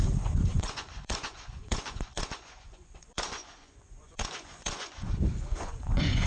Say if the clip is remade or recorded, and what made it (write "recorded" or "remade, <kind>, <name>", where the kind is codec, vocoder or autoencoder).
remade, vocoder, Vocos